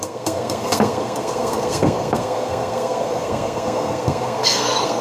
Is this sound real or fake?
fake